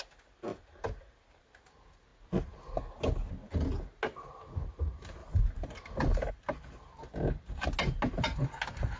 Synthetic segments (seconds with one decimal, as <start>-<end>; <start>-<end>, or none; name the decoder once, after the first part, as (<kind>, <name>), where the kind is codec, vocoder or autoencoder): 0.5-1.4 (vocoder, BigVGAN v2); 5.2-6.3